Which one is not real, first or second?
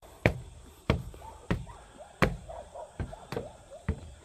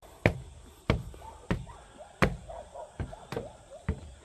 first